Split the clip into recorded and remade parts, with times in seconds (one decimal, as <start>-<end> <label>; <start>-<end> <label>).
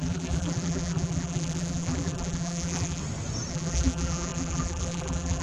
0.0-3.0 remade; 3.0-3.5 recorded; 3.5-5.4 remade